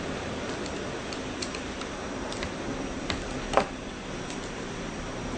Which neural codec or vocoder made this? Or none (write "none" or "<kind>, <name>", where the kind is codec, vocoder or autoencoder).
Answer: vocoder, BigVGAN v2